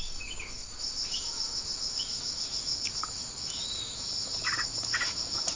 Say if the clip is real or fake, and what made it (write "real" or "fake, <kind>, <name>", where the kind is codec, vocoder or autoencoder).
fake, autoencoder, DAC-VAE